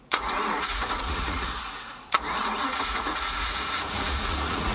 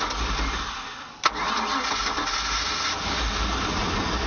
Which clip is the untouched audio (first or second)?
second